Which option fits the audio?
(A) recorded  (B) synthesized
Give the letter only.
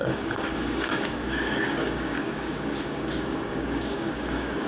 B